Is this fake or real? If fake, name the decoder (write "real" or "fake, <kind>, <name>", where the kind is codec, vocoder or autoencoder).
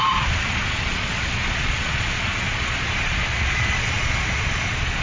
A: fake, vocoder, Vocos